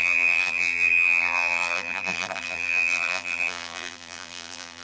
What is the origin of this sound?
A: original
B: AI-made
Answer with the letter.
B